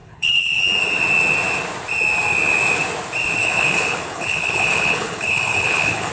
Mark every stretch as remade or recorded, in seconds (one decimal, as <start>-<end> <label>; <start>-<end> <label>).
0.0-0.6 remade; 0.6-3.4 recorded; 3.4-6.1 remade